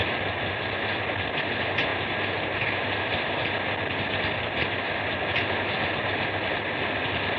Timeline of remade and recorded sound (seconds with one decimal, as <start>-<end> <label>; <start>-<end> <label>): 0.0-7.4 recorded